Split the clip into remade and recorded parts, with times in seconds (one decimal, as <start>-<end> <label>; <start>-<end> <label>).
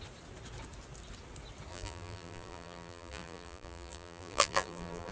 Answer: 0.0-1.7 recorded; 1.7-5.1 remade